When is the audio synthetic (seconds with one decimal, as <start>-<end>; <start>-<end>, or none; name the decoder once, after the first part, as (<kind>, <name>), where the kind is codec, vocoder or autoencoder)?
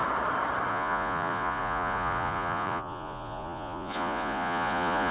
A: 0.7-5.1 (vocoder, Vocos)